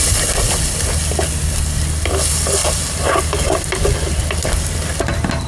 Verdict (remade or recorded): recorded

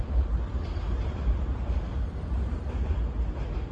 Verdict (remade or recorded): remade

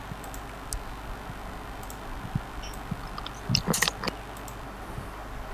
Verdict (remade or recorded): recorded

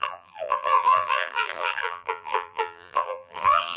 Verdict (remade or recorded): remade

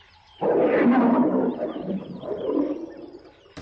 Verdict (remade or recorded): remade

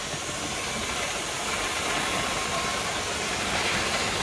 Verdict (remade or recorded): remade